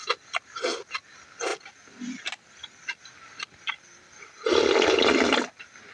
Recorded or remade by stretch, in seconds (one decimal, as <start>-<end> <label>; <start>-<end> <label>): 0.0-5.9 recorded